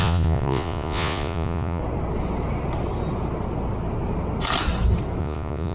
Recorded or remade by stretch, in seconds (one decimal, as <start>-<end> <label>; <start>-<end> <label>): 0.0-1.8 remade; 1.8-5.2 recorded; 5.2-5.7 remade